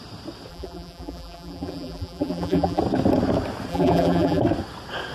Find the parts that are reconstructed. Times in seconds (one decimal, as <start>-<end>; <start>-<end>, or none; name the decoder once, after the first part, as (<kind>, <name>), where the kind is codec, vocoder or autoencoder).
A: 0.5-2.8 (vocoder, BigVGAN v2); 3.7-4.4